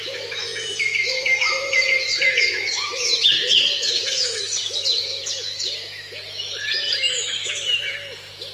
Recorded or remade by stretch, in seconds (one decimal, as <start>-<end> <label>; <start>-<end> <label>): 0.0-8.5 remade